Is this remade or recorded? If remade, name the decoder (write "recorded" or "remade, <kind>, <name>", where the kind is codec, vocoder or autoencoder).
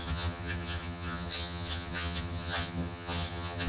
remade, vocoder, HiFi-GAN